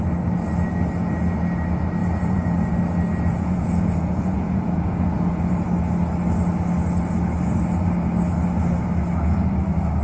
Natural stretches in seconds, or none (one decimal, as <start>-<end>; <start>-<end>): 0.0-2.0; 2.7-3.3; 5.5-10.0